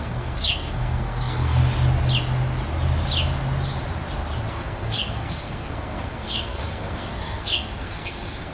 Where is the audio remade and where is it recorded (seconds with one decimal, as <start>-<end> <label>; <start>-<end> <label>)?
0.0-1.6 remade; 1.6-4.5 recorded; 4.5-8.5 remade